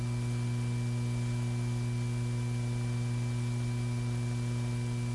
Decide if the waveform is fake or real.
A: real